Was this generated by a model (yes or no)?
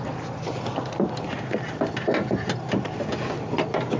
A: no